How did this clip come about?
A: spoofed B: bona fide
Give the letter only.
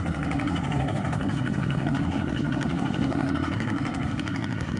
A